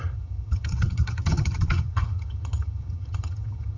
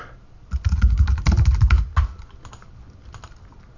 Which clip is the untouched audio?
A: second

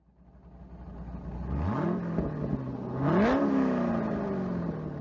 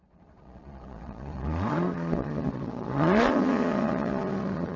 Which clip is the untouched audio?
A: first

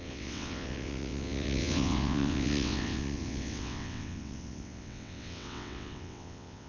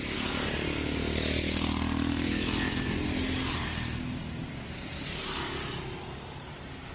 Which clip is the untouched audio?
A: second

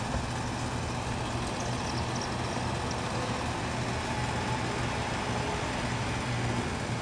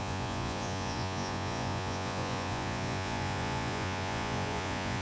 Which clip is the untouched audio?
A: first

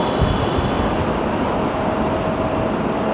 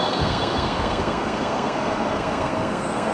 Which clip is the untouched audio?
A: first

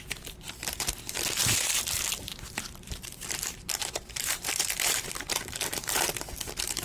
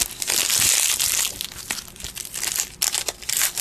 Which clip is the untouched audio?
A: second